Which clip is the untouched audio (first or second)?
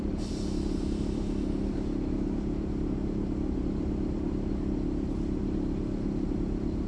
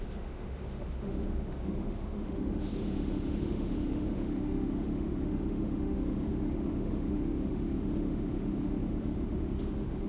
first